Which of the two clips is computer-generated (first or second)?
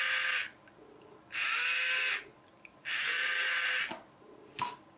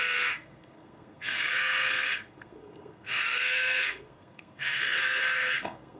second